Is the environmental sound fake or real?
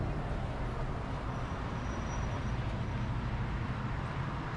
real